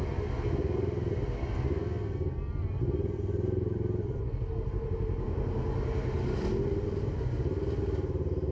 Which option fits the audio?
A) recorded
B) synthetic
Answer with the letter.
A